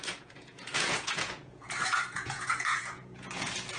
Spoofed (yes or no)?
yes